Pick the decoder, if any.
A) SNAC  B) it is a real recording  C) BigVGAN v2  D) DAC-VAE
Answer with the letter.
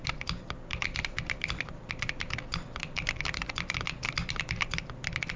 B